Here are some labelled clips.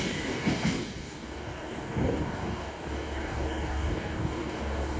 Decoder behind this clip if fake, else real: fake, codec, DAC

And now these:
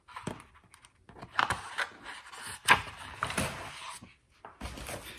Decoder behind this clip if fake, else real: real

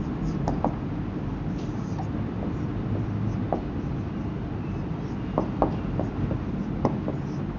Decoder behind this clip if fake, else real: real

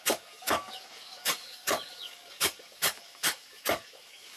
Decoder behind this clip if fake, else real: fake, codec, DAC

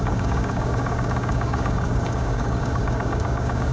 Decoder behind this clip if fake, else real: fake, codec, DAC